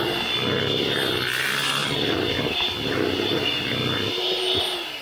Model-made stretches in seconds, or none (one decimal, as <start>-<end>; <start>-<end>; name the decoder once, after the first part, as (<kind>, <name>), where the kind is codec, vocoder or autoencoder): 1.8-2.3 (vocoder, BigVGAN v2)

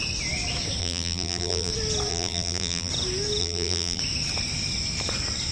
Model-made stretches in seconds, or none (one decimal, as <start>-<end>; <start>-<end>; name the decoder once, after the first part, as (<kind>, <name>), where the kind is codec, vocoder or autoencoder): 0.8-1.7 (vocoder, BigVGAN v2); 2.1-2.9; 3.4-4.0

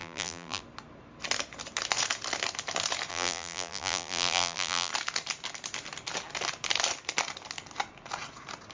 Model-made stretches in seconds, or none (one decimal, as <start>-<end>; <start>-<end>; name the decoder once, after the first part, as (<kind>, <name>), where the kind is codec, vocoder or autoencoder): 0.0-0.6 (vocoder, BigVGAN v2); 3.1-4.9

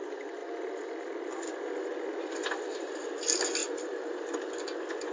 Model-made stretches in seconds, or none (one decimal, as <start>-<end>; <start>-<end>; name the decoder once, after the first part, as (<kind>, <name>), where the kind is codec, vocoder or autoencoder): 3.6-4.5 (vocoder, BigVGAN v2)

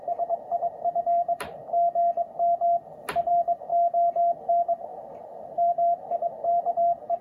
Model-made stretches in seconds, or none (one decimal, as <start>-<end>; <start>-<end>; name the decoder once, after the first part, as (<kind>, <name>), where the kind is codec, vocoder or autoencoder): 0.0-1.6 (vocoder, BigVGAN v2); 3.3-3.7; 4.5-7.2